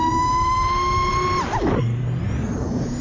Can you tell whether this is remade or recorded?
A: recorded